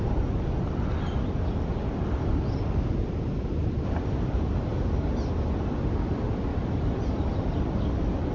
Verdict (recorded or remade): recorded